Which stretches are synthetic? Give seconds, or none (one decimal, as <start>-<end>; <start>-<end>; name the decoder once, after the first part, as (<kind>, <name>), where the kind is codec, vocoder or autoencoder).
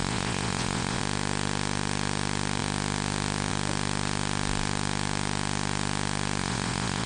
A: 0.0-1.0 (vocoder, Vocos); 6.4-7.1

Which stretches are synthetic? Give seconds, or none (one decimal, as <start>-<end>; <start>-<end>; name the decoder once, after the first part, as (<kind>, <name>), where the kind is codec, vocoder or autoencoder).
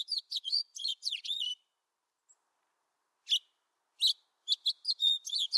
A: 0.0-1.5 (vocoder, Vocos); 4.9-5.6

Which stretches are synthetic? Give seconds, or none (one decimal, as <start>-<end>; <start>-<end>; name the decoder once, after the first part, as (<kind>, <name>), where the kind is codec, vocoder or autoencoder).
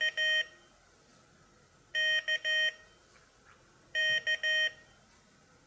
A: none